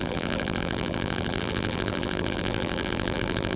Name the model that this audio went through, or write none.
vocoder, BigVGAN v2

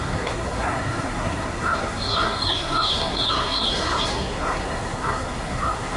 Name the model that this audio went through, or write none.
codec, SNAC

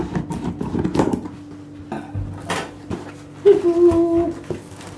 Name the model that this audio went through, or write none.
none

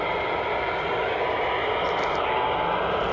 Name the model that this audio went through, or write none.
none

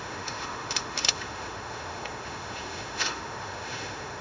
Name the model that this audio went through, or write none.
autoencoder, DAC-VAE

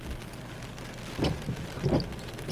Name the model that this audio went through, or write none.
none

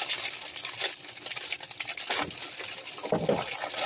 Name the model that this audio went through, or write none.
none